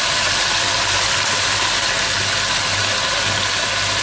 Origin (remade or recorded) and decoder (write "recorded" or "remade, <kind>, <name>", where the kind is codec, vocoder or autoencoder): recorded